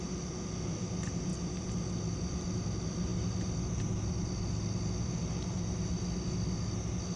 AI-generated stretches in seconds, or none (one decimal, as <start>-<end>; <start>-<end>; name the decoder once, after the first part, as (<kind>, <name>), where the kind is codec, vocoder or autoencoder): none